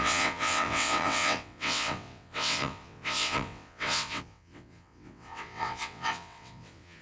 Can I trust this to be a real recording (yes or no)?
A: no